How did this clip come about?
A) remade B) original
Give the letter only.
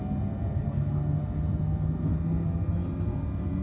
B